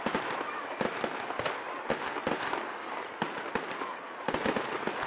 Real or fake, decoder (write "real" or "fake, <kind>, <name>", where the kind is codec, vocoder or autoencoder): real